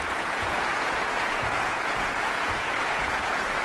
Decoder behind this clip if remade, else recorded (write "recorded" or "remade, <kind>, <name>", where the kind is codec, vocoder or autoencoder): remade, vocoder, Vocos